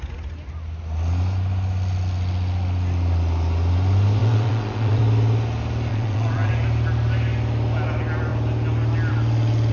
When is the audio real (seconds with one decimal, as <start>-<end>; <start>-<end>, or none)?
0.0-4.2; 5.0-5.9; 6.5-9.7